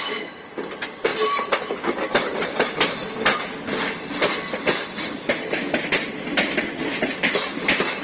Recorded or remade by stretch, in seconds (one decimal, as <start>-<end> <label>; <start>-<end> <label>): 0.0-8.0 recorded